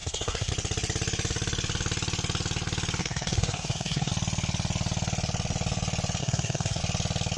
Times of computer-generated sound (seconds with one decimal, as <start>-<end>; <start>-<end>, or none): 0.0-0.5; 3.0-4.1; 6.2-6.8